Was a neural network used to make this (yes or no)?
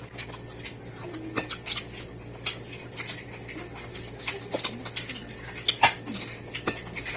no